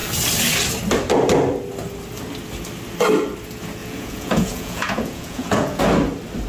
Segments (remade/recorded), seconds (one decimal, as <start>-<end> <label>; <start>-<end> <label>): 0.0-3.8 recorded; 3.8-5.8 remade; 5.8-6.5 recorded